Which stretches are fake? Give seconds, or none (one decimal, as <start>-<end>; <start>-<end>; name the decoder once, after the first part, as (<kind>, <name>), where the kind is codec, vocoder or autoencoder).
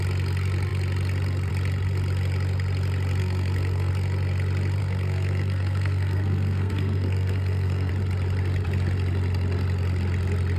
3.2-3.9 (codec, SNAC); 4.8-7.9